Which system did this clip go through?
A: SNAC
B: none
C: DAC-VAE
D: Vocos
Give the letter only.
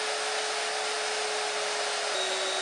B